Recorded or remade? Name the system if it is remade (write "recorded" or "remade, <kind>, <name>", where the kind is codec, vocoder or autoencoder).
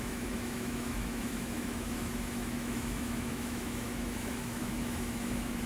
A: remade, autoencoder, DAC-VAE